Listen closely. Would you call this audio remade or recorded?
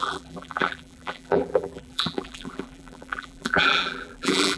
remade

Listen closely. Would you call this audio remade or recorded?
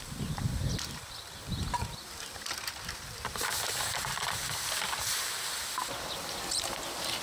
remade